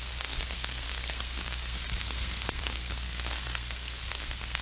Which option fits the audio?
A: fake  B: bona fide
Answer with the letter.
A